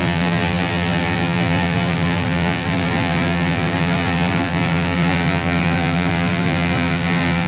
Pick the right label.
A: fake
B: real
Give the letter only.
A